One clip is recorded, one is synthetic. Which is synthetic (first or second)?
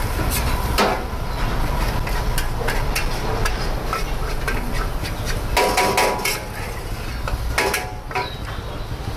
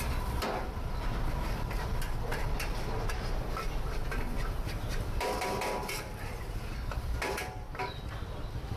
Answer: second